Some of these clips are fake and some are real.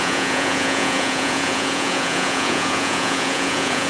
fake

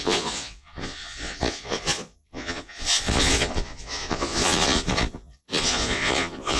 fake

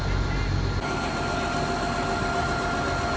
real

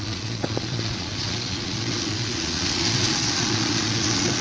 fake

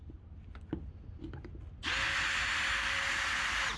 real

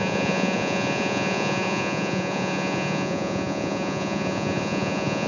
fake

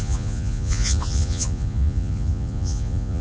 fake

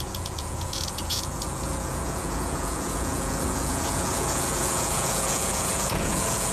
fake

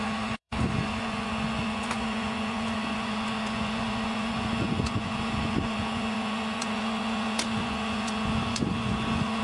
fake